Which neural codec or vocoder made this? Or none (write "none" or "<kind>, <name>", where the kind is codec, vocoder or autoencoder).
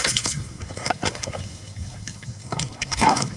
codec, SNAC